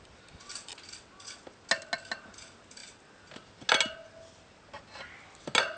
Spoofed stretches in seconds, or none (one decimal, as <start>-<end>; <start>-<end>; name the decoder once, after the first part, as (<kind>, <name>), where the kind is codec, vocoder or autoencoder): none